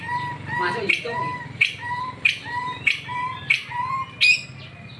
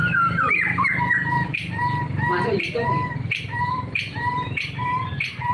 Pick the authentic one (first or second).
first